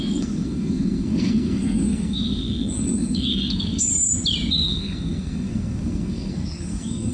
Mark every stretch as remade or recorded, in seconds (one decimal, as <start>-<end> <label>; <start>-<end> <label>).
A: 0.0-3.9 remade; 3.9-4.5 recorded; 4.5-7.1 remade